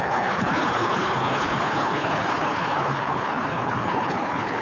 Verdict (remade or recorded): remade